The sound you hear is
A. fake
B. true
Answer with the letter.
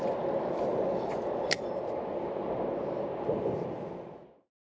B